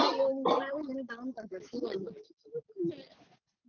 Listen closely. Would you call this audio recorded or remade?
recorded